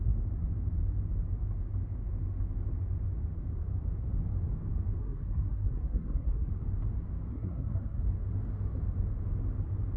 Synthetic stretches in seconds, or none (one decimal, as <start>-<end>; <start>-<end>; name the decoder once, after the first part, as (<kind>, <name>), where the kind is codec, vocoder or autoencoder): 5.0-6.5 (codec, SNAC); 7.3-8.0